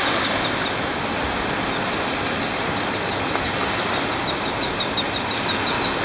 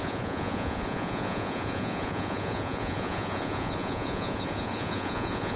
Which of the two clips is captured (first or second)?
first